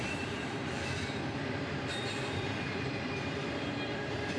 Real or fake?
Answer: fake